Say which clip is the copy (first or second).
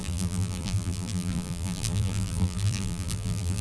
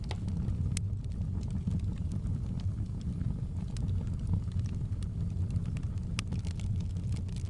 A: first